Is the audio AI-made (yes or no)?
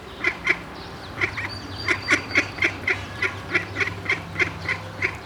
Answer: yes